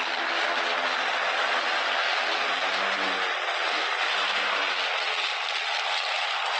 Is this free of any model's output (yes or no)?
yes